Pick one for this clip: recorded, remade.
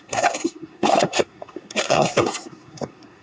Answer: remade